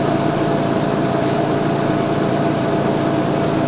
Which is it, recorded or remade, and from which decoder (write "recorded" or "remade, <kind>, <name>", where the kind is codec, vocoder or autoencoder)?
remade, vocoder, BigVGAN v2